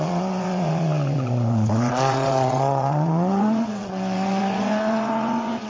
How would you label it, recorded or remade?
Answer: remade